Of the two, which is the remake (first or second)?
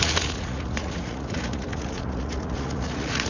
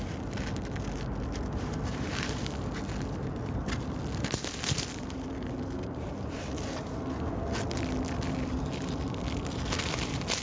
first